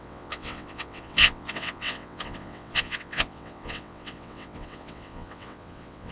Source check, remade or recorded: remade